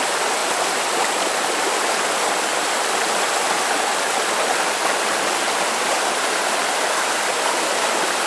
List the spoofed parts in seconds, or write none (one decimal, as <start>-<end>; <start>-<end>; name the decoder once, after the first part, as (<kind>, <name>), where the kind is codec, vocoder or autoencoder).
none